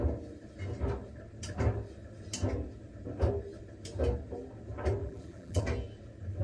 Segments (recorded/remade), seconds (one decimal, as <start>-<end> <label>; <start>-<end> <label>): 0.0-5.0 recorded; 5.0-5.6 remade; 5.6-6.4 recorded

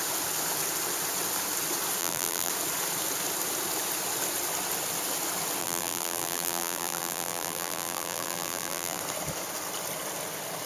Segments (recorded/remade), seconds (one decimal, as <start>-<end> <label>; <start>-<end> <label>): 0.0-2.0 recorded; 2.0-2.5 remade; 2.5-5.6 recorded; 5.6-9.0 remade; 9.0-10.7 recorded

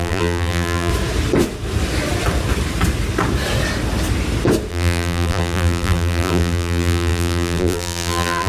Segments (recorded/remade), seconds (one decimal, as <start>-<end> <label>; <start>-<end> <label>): 0.0-0.9 remade; 0.9-4.7 recorded; 4.7-8.5 remade

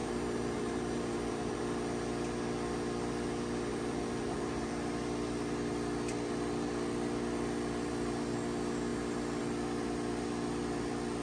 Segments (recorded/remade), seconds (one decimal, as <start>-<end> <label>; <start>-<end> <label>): 0.0-1.6 remade; 1.6-3.7 recorded; 3.7-4.7 remade; 4.7-11.2 recorded

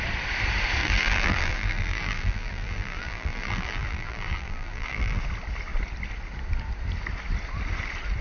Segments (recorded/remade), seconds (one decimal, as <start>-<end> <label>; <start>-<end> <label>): 0.0-0.8 recorded; 0.8-5.2 remade; 5.2-8.2 recorded

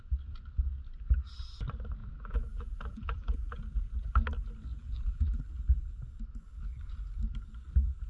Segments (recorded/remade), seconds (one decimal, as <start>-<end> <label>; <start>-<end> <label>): 0.0-2.0 recorded; 2.0-3.6 remade; 3.6-4.7 recorded; 4.7-5.4 remade; 5.4-8.1 recorded